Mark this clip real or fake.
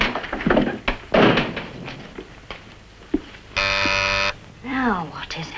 real